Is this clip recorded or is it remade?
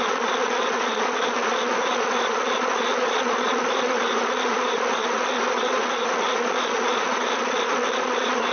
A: remade